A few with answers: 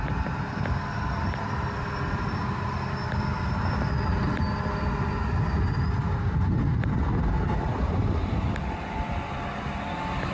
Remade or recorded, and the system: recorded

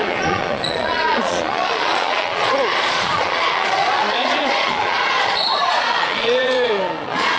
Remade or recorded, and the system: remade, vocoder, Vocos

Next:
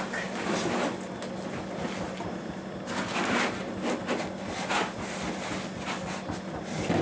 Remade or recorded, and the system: recorded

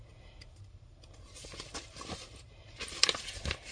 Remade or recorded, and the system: recorded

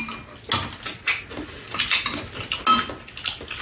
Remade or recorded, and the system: recorded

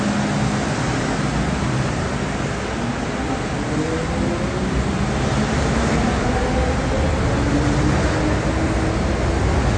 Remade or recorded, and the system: recorded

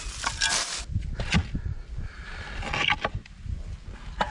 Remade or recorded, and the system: recorded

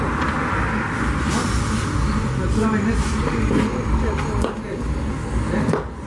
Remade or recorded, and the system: recorded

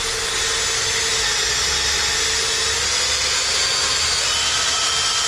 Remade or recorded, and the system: recorded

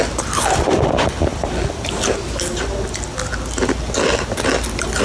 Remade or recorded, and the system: recorded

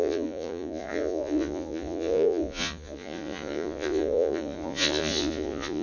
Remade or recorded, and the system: remade, vocoder, Vocos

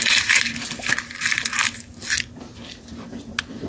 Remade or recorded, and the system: recorded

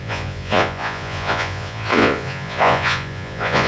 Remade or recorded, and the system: remade, vocoder, Vocos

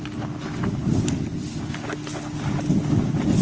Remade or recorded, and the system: recorded